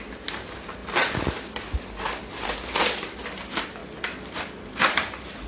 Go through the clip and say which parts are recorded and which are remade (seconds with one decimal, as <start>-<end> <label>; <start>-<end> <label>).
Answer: 0.0-5.5 recorded